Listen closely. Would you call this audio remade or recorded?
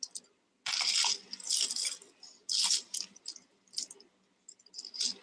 recorded